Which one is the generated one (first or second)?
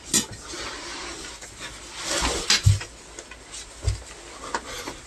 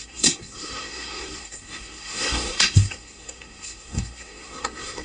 second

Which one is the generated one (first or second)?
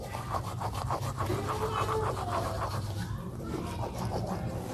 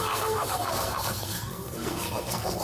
second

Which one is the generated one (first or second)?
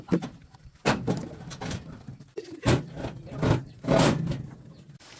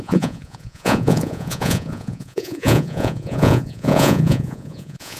second